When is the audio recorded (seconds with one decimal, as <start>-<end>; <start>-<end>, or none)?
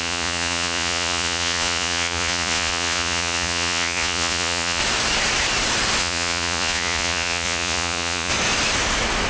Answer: 4.8-6.0; 8.3-9.3